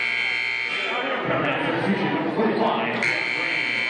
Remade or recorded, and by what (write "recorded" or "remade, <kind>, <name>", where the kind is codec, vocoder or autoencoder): recorded